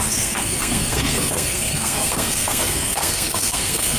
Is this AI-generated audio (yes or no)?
yes